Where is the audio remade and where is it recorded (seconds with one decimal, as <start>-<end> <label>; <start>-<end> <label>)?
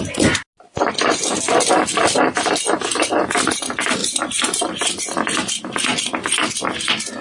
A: 0.0-4.0 recorded; 4.0-4.7 remade; 4.7-7.2 recorded